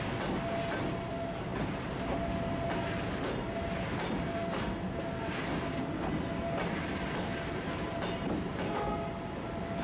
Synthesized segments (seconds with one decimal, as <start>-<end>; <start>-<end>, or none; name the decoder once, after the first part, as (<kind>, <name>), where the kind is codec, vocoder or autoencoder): none